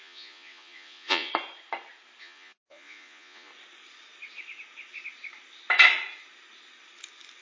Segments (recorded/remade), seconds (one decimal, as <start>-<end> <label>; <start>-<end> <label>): 0.0-1.3 remade; 1.3-2.2 recorded; 2.2-3.5 remade; 3.5-7.4 recorded